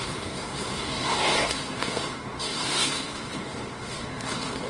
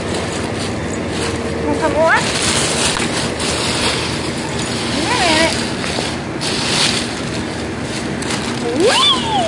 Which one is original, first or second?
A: second